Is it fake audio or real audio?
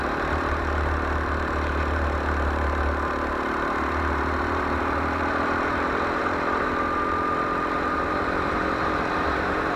fake